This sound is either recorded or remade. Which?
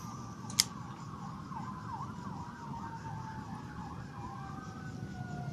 recorded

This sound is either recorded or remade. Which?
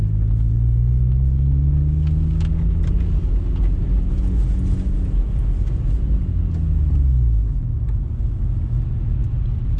recorded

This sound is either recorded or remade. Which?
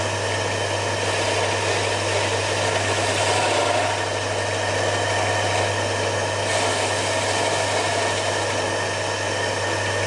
recorded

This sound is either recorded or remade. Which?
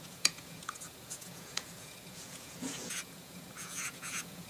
remade